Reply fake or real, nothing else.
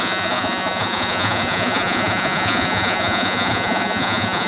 fake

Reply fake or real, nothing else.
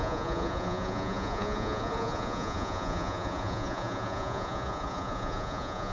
fake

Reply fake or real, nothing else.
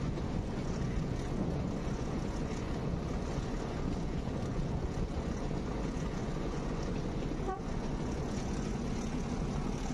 fake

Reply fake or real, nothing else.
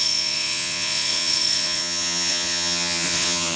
fake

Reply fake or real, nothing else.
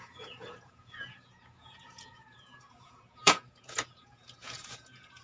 fake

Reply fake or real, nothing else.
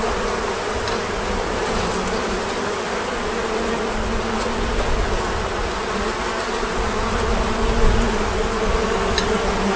real